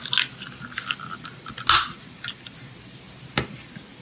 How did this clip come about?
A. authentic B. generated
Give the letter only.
A